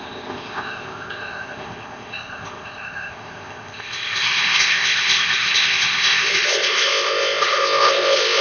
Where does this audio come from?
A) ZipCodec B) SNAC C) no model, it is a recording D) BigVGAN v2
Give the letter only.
A